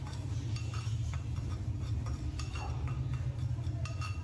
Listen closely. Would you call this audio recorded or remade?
recorded